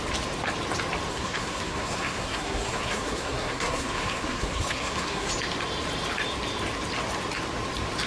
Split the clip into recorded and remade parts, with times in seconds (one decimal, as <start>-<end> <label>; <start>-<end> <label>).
0.0-1.1 recorded; 1.1-5.3 remade; 5.3-8.1 recorded